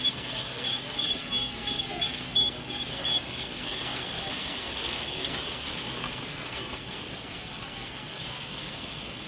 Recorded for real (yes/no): no